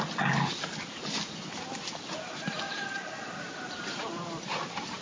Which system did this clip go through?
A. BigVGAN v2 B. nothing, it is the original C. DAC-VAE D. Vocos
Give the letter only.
B